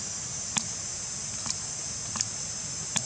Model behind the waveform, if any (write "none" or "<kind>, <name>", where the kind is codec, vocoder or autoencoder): none